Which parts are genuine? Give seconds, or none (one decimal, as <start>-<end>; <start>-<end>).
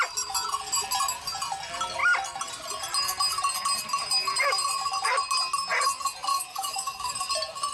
0.0-6.3; 7.1-7.7